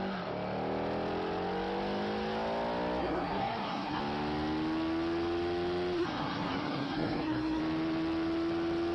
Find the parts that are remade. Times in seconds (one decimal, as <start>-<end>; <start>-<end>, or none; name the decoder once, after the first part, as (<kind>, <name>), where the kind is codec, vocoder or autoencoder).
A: 3.0-4.0 (codec, SNAC); 6.0-7.6